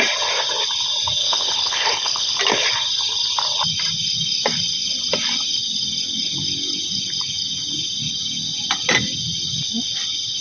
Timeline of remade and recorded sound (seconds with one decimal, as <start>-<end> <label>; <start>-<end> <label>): 0.0-1.2 recorded; 1.2-2.4 remade; 2.4-10.4 recorded